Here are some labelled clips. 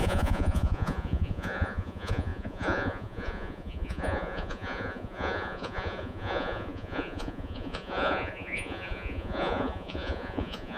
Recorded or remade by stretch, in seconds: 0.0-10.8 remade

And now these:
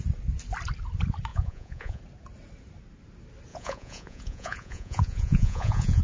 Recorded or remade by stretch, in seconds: 0.0-1.3 recorded; 1.3-2.0 remade; 2.0-3.5 recorded; 3.5-6.0 remade

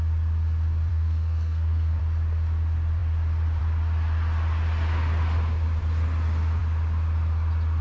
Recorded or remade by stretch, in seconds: 0.0-0.9 recorded; 0.9-2.0 remade; 2.0-7.8 recorded

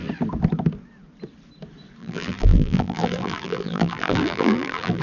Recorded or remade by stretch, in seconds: 0.0-2.0 recorded; 2.0-5.0 remade

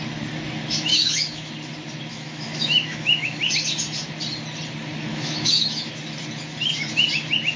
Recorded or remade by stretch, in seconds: 0.0-0.9 recorded; 0.9-1.5 remade; 1.5-2.1 recorded; 2.1-3.5 remade; 3.5-5.1 recorded; 5.1-5.9 remade; 5.9-7.6 recorded

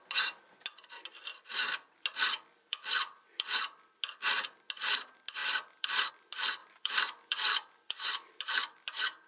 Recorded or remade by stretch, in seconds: 0.0-2.5 recorded; 2.5-3.6 remade; 3.6-5.4 recorded; 5.4-6.1 remade; 6.1-6.6 recorded; 6.6-8.4 remade; 8.4-9.3 recorded

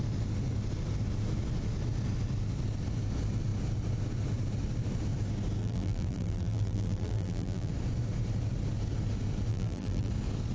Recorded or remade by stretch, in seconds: 0.0-5.6 recorded; 5.6-7.7 remade; 7.7-9.5 recorded; 9.5-10.1 remade; 10.1-10.5 recorded